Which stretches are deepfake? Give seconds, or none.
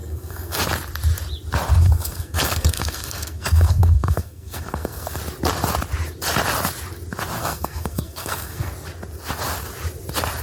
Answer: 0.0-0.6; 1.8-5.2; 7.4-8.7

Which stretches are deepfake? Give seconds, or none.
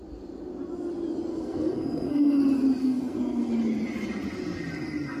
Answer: 1.3-2.4; 2.8-3.5